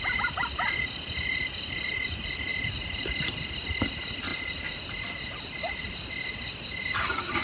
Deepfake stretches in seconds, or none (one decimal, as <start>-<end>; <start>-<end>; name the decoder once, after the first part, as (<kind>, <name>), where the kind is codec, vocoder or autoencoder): none